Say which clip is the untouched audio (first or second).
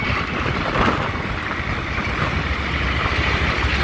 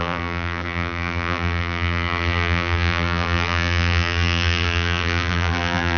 first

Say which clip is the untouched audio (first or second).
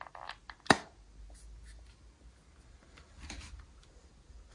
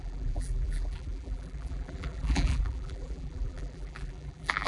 first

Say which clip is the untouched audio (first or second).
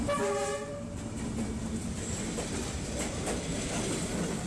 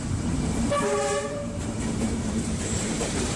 first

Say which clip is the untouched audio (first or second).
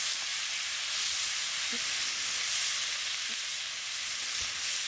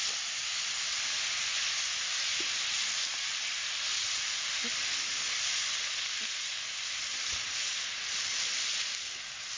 first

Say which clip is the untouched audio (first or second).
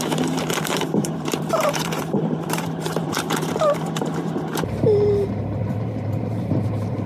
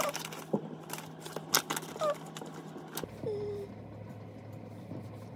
second